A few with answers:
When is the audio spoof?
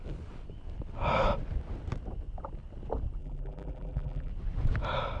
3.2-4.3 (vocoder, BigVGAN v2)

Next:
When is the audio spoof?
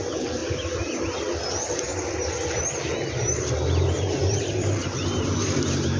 0.0-0.4 (vocoder, BigVGAN v2); 1.5-1.9; 3.1-6.0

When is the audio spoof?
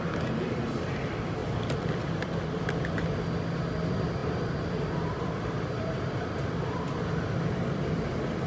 1.4-2.8 (vocoder, BigVGAN v2); 4.2-6.9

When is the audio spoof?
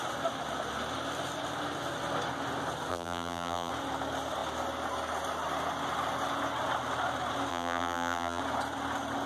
2.9-3.7 (vocoder, BigVGAN v2); 7.5-8.4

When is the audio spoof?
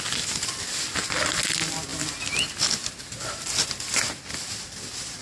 none